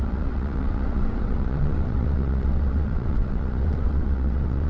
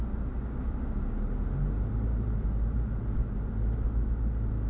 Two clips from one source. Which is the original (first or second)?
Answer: second